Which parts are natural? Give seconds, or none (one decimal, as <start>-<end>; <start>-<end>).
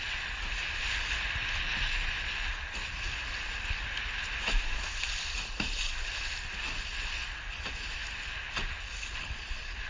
0.0-4.3; 5.0-9.9